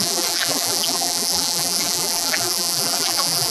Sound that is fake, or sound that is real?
fake